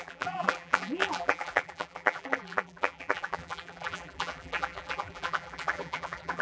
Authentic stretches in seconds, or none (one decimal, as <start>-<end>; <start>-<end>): none